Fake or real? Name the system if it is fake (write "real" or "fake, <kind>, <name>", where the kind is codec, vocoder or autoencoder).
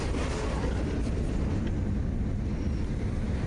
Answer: real